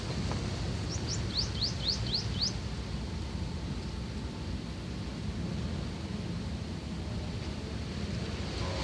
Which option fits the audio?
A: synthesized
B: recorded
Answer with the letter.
B